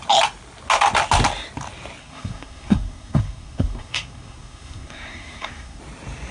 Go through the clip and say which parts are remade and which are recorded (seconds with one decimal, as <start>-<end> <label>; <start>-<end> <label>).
0.0-2.0 recorded; 2.0-5.8 remade; 5.8-6.3 recorded

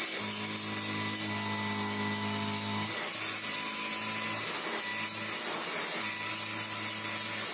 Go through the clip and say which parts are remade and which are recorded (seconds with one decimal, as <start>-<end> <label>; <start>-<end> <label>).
0.0-7.5 recorded

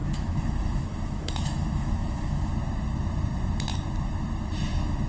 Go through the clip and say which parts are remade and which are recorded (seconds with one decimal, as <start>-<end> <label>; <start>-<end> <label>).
0.0-2.5 remade; 2.5-5.1 recorded

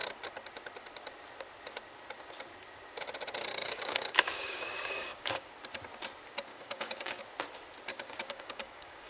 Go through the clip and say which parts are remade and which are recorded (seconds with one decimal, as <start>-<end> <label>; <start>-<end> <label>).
0.0-3.6 recorded; 3.6-5.5 remade; 5.5-6.5 recorded; 6.5-7.2 remade; 7.2-7.9 recorded; 7.9-9.1 remade

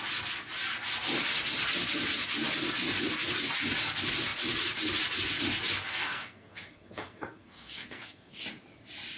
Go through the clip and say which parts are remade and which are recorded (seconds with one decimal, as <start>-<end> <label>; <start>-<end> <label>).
0.0-5.9 recorded; 5.9-8.4 remade; 8.4-9.2 recorded

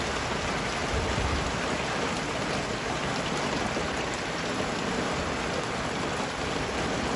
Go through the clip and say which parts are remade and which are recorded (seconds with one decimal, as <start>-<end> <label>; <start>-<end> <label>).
0.0-7.2 recorded

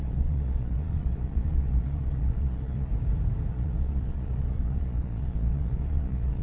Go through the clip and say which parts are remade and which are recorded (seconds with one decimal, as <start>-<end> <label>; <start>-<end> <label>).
0.0-2.9 remade; 2.9-3.5 recorded; 3.5-6.4 remade